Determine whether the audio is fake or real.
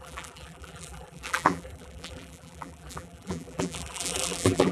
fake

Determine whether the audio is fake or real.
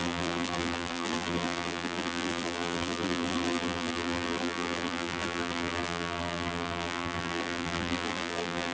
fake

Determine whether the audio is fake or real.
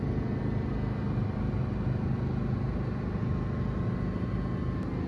real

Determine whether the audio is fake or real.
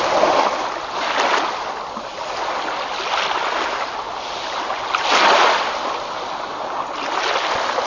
real